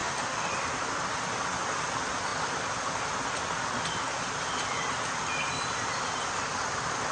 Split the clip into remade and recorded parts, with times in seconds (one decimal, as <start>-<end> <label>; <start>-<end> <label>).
0.0-0.5 remade; 0.5-7.1 recorded